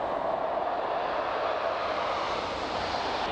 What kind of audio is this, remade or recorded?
recorded